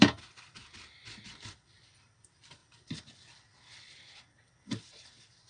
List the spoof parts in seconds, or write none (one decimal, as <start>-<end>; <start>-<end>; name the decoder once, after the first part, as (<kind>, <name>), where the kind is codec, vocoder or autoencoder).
0.0-0.6 (vocoder, BigVGAN v2); 1.4-5.5